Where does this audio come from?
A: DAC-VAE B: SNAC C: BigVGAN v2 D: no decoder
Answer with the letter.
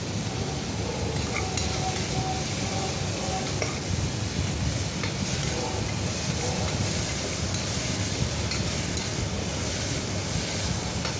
D